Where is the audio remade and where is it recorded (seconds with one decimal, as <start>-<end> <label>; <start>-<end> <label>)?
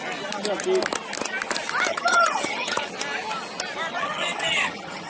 0.0-1.9 recorded; 1.9-2.9 remade; 2.9-3.9 recorded; 3.9-5.1 remade